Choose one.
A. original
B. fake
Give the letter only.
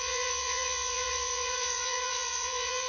B